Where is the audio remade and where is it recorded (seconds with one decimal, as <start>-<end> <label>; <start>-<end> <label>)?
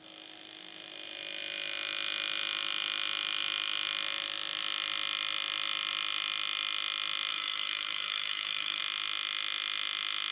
0.0-7.3 recorded; 7.3-8.8 remade; 8.8-10.3 recorded